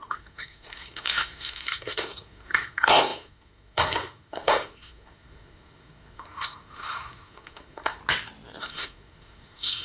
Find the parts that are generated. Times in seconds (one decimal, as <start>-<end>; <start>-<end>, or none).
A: 0.0-8.0; 8.6-9.8